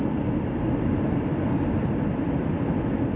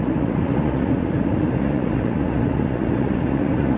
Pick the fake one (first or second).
second